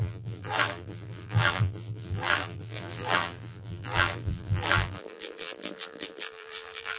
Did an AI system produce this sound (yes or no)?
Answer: yes